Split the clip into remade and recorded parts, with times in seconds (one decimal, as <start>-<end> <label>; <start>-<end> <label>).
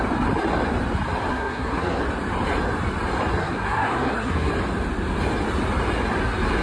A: 0.0-1.3 recorded; 1.3-2.0 remade; 2.0-3.4 recorded; 3.4-4.5 remade; 4.5-6.6 recorded